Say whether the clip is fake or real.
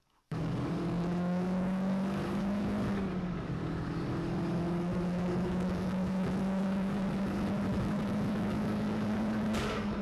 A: fake